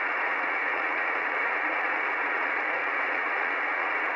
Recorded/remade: remade